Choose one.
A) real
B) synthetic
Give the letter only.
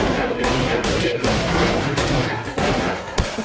B